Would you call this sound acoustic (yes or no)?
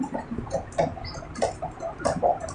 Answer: yes